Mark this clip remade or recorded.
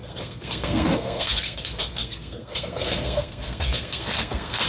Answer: remade